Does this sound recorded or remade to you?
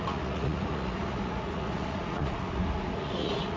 remade